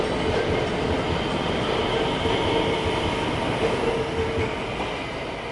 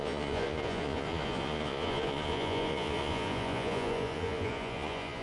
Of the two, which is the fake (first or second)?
second